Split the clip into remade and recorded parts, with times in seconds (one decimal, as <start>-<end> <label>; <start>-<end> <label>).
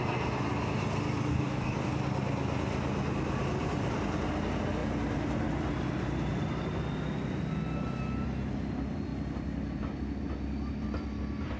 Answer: 0.0-1.3 recorded; 1.3-1.9 remade; 1.9-11.6 recorded